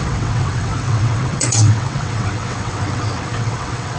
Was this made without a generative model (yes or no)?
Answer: no